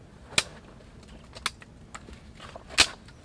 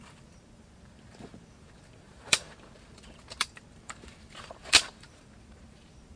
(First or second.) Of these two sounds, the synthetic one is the second